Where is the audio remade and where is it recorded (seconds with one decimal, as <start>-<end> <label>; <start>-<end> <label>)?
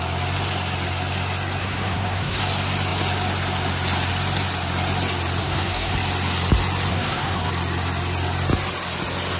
0.0-1.6 recorded; 1.6-2.4 remade; 2.4-5.4 recorded; 5.4-5.9 remade; 5.9-6.9 recorded; 6.9-7.5 remade; 7.5-9.4 recorded